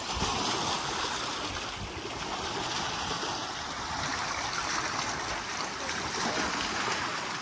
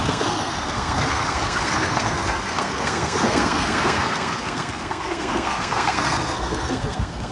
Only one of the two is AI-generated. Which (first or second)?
second